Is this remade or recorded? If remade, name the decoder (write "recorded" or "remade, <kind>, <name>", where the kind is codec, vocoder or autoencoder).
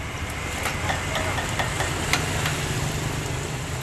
recorded